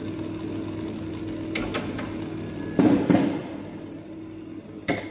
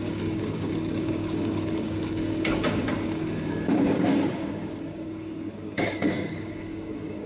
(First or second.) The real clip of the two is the first